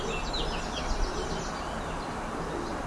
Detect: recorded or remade recorded